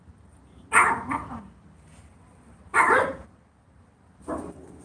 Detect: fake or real real